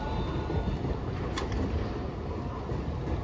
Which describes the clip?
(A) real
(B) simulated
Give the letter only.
A